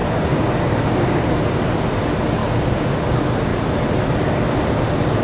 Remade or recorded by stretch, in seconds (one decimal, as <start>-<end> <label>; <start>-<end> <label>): 0.0-1.6 remade; 1.6-2.4 recorded; 2.4-3.0 remade; 3.0-5.2 recorded